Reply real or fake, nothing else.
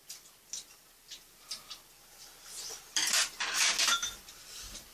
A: real